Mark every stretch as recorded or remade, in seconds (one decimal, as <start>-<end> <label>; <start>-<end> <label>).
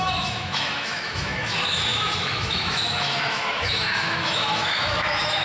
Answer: 0.0-5.4 remade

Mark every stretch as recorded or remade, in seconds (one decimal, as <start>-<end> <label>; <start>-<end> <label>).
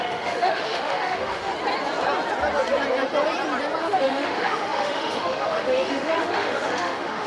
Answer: 0.0-1.5 remade; 1.5-3.8 recorded; 3.8-7.3 remade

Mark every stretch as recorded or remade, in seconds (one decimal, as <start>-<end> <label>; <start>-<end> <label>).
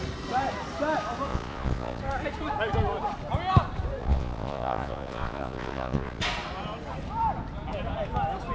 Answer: 0.0-1.3 recorded; 1.3-2.0 remade; 2.0-4.0 recorded; 4.0-6.2 remade; 6.2-8.5 recorded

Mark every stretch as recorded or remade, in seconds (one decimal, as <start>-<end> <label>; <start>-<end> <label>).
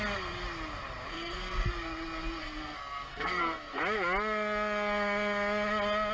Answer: 0.0-1.1 recorded; 1.1-1.7 remade; 1.7-2.4 recorded; 2.4-3.8 remade; 3.8-6.1 recorded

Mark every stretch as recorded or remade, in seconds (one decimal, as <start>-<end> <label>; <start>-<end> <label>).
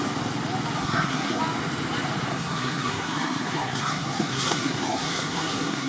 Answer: 0.0-0.8 recorded; 0.8-1.4 remade; 1.4-2.3 recorded; 2.3-5.9 remade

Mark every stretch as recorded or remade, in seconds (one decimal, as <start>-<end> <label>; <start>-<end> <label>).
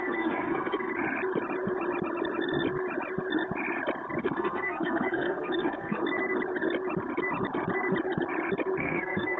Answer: 0.0-0.9 remade; 0.9-4.2 recorded; 4.2-6.0 remade; 6.0-8.8 recorded; 8.8-9.4 remade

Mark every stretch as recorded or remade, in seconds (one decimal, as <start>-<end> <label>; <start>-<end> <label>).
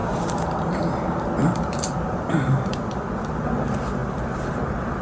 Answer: 0.0-0.8 remade; 0.8-1.4 recorded; 1.4-2.9 remade; 2.9-5.0 recorded